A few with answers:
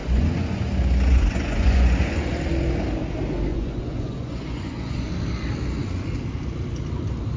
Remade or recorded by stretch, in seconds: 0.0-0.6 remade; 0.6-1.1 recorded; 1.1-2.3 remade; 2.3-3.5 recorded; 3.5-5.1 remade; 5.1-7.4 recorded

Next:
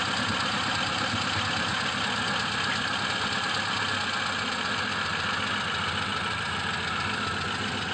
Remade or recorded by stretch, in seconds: 0.0-7.9 recorded

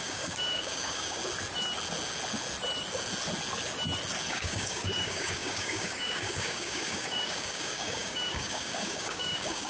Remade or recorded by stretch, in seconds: 0.0-1.2 remade; 1.2-4.3 recorded; 4.3-9.7 remade

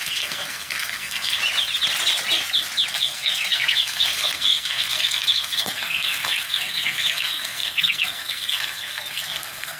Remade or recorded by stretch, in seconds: 0.0-1.4 remade; 1.4-2.9 recorded; 2.9-9.8 remade

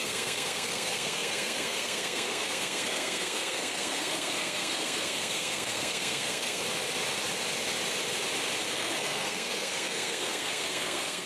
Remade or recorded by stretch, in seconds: 0.0-6.6 remade; 6.6-8.7 recorded; 8.7-11.3 remade